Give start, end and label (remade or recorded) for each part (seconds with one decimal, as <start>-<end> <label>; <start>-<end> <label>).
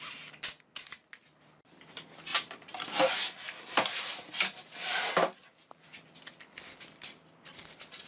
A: 0.0-8.1 recorded